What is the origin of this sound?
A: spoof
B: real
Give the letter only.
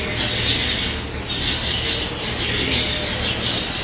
B